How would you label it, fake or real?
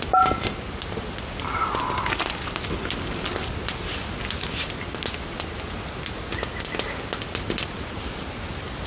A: real